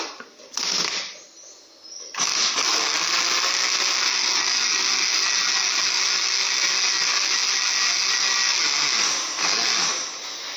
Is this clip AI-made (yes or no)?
no